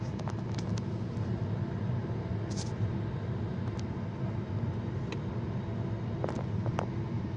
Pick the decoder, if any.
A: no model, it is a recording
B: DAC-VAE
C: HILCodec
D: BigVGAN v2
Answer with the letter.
A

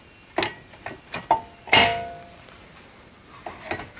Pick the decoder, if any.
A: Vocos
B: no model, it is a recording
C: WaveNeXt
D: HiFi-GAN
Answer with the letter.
B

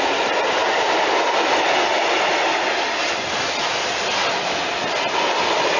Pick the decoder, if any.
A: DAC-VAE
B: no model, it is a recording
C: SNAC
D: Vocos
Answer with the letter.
B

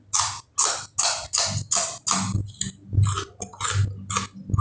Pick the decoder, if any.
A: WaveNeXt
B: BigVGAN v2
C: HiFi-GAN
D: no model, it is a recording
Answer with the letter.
D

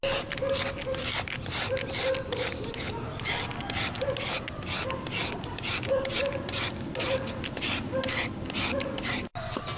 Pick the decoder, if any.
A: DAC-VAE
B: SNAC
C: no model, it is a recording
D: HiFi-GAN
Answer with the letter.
C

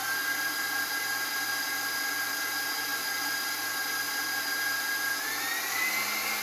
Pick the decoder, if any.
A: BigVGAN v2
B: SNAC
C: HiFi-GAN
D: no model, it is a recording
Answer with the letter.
A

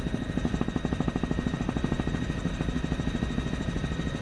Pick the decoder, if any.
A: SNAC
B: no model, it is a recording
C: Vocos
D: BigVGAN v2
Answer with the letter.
B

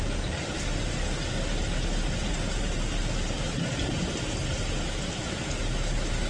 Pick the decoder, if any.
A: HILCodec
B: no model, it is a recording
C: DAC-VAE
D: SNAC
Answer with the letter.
B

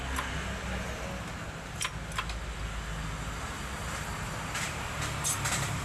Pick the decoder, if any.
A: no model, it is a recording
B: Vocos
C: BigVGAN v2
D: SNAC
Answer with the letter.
A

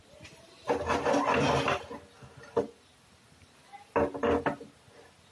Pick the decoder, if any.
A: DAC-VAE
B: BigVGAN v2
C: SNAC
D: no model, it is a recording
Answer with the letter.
D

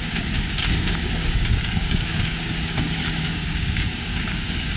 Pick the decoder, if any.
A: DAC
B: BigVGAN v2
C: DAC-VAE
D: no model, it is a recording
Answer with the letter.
A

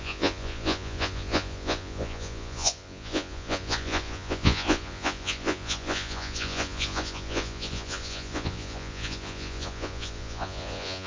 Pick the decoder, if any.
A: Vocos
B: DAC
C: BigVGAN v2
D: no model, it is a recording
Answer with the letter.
A